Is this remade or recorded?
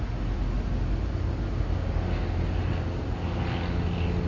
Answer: recorded